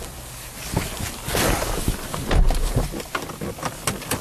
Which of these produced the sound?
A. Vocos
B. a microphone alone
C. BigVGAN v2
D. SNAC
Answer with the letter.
B